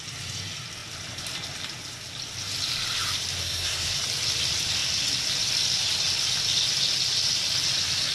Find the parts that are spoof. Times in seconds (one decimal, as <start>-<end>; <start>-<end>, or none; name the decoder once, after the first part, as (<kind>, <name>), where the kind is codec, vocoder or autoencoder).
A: 3.4-4.0 (codec, SNAC)